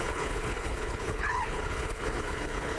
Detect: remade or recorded remade